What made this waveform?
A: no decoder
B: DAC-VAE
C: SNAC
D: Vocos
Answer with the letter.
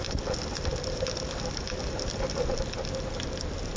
A